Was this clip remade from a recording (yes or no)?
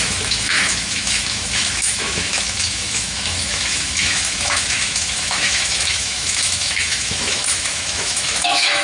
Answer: yes